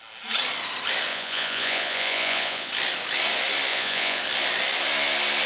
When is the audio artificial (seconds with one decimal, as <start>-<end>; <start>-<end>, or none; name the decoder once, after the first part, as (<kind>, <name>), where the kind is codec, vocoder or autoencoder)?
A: 1.1-2.7 (vocoder, Vocos); 3.7-4.2